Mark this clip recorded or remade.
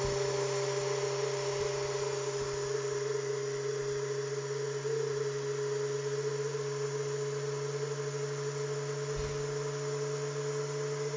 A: recorded